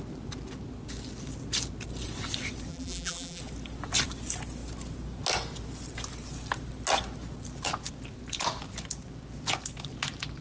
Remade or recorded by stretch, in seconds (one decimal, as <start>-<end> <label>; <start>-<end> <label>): 0.0-2.7 recorded; 2.7-3.4 remade; 3.4-10.4 recorded